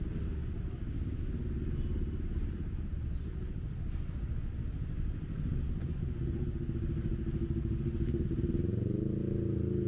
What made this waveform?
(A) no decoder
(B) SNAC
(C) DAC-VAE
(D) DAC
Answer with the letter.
A